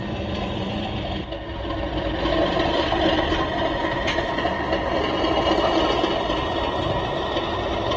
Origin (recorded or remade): recorded